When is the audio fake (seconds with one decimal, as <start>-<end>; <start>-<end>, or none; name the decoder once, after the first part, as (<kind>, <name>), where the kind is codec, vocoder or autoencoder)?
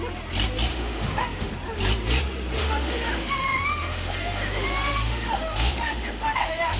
0.7-1.5 (autoencoder, DAC-VAE); 2.6-6.8